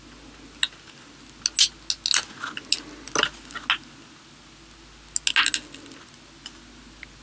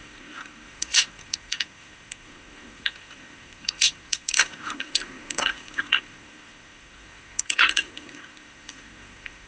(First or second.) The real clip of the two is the first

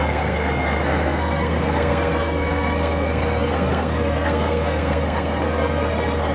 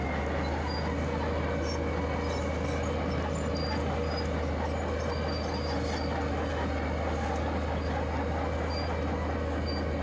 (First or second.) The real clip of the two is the second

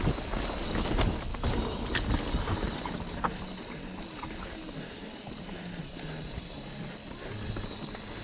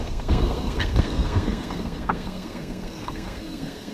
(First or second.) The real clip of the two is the first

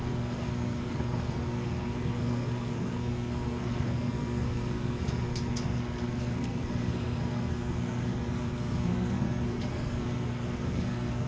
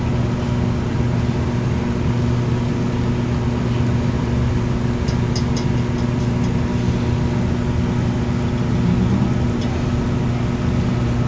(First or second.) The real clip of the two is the second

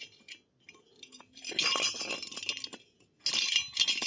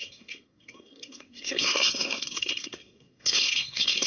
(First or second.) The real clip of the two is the first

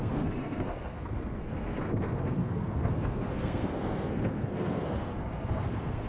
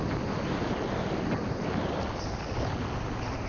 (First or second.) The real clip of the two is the second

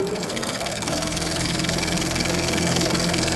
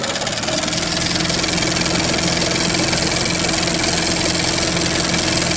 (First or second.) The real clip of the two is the second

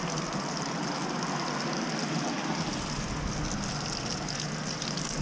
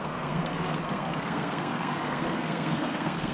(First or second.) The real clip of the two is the first